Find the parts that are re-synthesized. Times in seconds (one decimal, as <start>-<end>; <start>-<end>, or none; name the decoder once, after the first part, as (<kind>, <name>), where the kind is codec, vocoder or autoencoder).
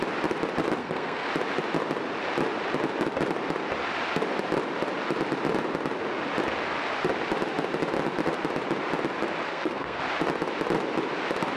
0.8-1.3 (codec, SNAC); 9.5-10.0